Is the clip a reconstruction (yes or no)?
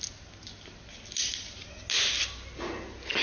no